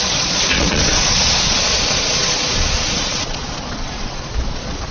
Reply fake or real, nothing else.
fake